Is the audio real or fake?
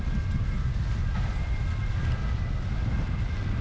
real